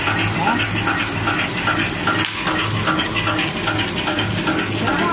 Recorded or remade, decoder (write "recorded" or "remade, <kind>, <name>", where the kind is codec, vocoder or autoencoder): recorded